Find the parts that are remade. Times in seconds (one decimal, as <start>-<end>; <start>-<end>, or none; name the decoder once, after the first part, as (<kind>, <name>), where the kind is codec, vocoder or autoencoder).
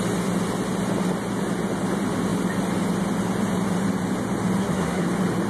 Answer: 4.6-5.1 (codec, SNAC)